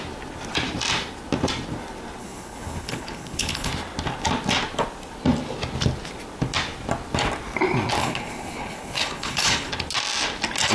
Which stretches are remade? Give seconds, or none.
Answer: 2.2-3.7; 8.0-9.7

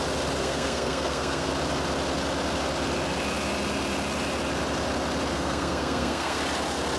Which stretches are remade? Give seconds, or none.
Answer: 0.4-1.5; 5.3-6.4

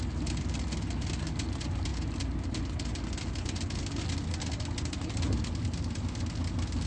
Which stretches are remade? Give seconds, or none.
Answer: none

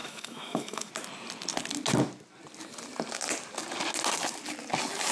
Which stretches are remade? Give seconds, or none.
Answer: 0.0-0.9